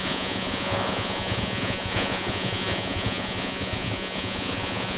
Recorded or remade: remade